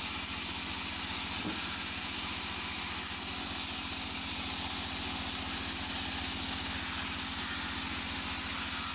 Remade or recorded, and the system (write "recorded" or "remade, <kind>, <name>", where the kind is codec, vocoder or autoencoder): recorded